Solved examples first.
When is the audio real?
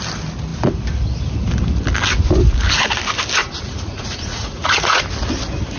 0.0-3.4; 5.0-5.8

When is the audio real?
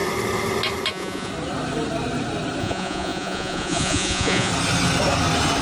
0.0-0.9; 1.3-2.6; 4.5-5.6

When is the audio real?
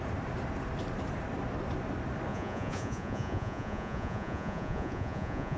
0.0-2.3